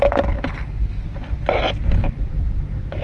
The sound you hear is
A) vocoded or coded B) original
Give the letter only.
B